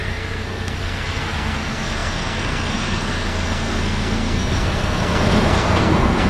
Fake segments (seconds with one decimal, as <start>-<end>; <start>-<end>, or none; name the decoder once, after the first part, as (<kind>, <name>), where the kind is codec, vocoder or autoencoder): 0.0-6.3 (codec, SNAC)